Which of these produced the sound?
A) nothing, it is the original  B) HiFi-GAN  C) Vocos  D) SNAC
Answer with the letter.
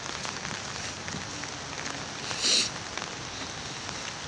A